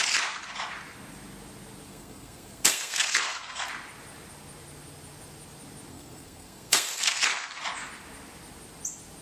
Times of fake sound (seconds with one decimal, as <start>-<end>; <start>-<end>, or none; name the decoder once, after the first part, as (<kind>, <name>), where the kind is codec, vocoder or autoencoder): 1.9-3.7 (codec, SNAC); 5.9-7.6